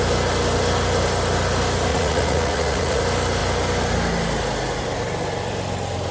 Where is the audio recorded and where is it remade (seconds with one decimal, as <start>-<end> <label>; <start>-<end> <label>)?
0.0-1.9 recorded; 1.9-3.0 remade; 3.0-6.1 recorded